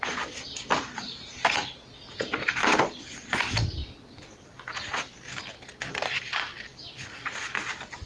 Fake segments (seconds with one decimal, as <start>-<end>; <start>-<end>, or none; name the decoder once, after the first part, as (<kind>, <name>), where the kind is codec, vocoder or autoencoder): 3.8-5.4 (vocoder, BigVGAN v2)